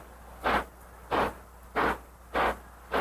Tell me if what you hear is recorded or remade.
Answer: recorded